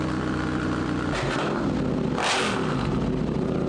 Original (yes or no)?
yes